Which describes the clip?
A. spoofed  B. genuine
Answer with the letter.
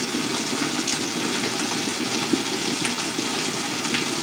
B